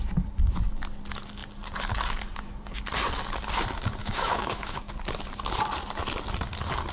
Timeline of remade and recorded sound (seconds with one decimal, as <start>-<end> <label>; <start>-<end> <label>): 0.0-4.0 recorded; 4.0-4.9 remade; 4.9-6.9 recorded